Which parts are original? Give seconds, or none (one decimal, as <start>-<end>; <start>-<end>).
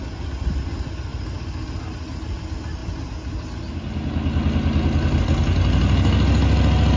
0.0-7.0